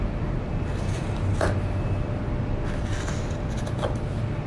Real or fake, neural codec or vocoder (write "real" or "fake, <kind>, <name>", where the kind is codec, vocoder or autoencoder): real